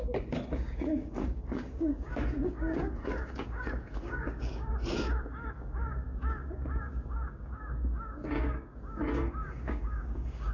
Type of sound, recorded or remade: remade